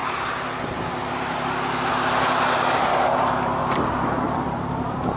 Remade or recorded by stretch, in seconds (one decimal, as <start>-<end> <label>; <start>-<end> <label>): 0.0-3.6 recorded; 3.6-5.2 remade

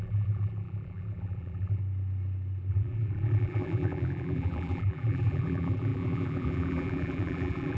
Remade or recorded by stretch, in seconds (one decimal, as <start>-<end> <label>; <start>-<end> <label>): 0.0-1.8 remade; 1.8-2.7 recorded; 2.7-7.8 remade

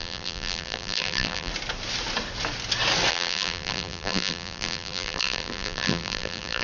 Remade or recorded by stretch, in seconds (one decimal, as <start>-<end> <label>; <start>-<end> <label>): 0.0-1.5 remade; 1.5-3.1 recorded; 3.1-6.6 remade

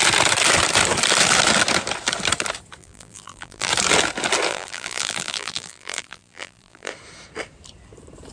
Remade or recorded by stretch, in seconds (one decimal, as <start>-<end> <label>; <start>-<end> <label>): 0.0-2.8 recorded; 2.8-3.7 remade; 3.7-4.5 recorded; 4.5-6.9 remade; 6.9-8.3 recorded

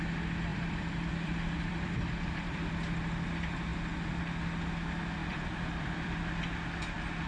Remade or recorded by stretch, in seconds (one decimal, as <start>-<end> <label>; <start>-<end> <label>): 0.0-0.5 recorded; 0.5-2.7 remade; 2.7-5.2 recorded; 5.2-6.4 remade; 6.4-7.3 recorded

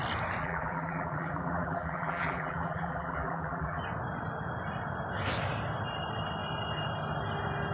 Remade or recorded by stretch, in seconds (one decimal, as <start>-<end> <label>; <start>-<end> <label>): 0.0-0.4 recorded; 0.4-3.8 remade; 3.8-7.7 recorded

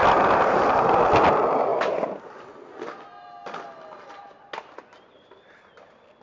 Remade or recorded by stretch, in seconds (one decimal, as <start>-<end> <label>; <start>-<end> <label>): 0.0-6.2 recorded